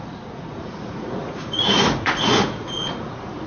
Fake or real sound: fake